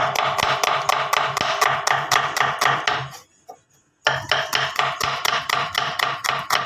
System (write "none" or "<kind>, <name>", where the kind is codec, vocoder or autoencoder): none